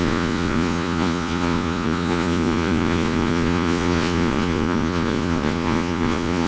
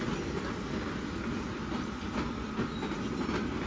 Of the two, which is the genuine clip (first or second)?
second